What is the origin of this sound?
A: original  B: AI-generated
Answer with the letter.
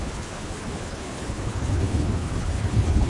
B